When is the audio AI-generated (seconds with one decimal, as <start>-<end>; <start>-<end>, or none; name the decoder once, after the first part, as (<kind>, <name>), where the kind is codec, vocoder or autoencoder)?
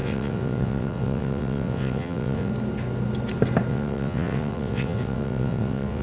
0.0-2.5 (vocoder, WaveNeXt); 3.7-6.0